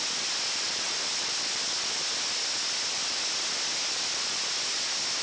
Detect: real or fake real